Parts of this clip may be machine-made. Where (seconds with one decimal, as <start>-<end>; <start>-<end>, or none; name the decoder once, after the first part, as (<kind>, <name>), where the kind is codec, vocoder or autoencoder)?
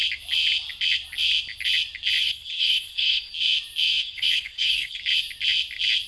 2.2-3.3 (codec, HILCodec); 4.0-5.0